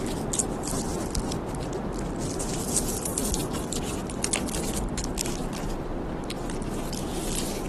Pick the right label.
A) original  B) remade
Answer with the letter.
A